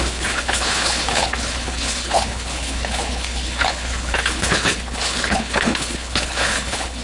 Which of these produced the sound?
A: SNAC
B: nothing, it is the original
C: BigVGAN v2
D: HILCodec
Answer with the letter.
D